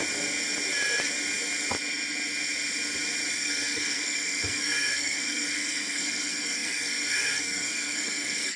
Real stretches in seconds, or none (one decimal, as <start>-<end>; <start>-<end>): 0.0-3.3

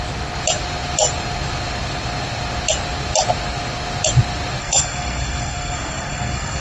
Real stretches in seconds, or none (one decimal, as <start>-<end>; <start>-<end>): 0.0-4.6